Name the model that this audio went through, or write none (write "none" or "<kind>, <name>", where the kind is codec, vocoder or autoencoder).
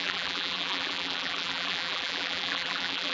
vocoder, BigVGAN v2